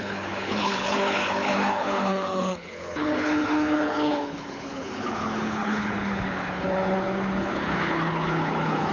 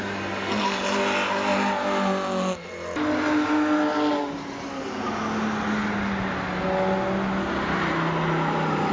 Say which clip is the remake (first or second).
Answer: first